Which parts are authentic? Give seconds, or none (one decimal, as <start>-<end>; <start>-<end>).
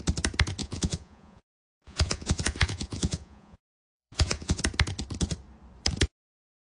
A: 0.0-0.6; 4.6-6.7